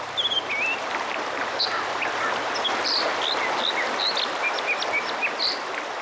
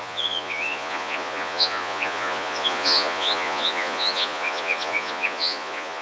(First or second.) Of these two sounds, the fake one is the second